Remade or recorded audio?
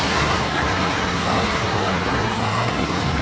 remade